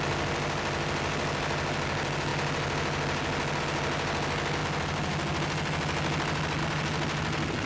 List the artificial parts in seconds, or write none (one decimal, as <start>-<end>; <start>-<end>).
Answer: none